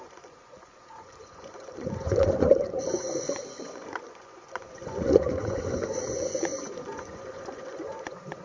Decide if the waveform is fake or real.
fake